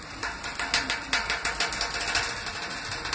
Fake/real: real